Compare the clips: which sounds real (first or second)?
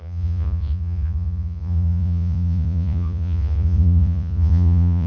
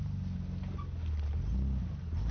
second